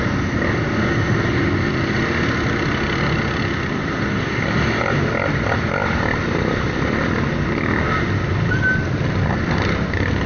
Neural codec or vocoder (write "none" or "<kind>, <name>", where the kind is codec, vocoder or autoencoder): none